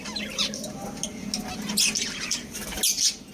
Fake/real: real